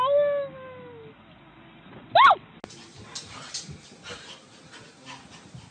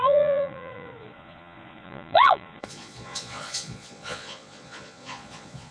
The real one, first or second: first